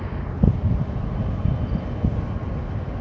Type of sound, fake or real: real